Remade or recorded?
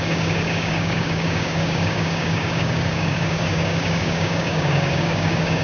remade